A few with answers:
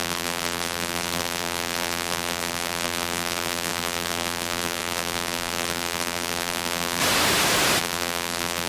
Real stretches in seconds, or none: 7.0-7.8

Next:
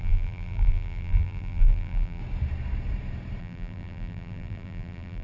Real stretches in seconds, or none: 2.2-3.4

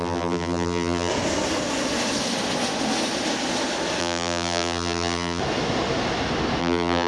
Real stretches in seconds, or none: 1.1-4.0; 5.4-6.6

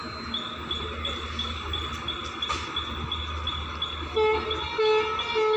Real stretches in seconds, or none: 0.0-5.6

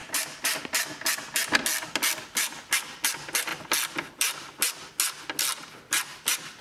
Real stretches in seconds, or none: 0.6-6.6

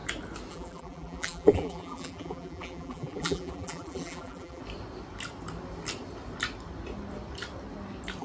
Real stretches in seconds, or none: 0.0-0.5; 4.6-8.2